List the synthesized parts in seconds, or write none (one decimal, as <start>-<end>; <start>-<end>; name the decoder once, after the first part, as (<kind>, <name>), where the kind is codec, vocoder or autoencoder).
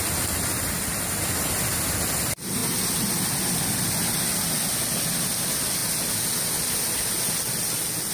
none